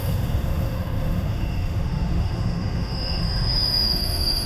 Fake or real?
fake